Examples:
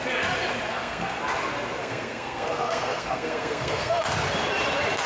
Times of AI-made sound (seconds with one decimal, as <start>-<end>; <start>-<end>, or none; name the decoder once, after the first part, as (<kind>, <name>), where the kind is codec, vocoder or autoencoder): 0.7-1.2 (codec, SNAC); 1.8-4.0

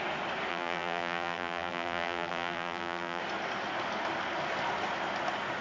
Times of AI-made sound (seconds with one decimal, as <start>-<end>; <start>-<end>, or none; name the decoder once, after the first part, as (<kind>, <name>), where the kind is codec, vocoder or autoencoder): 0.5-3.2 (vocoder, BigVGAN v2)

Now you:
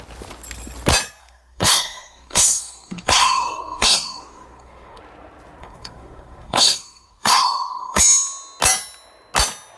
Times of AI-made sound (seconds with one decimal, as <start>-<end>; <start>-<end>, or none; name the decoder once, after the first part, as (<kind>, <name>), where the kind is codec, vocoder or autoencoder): 1.2-5.0 (codec, SNAC); 5.6-8.0